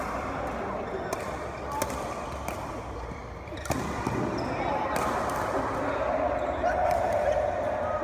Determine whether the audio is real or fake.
real